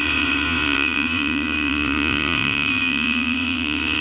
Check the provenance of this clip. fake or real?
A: fake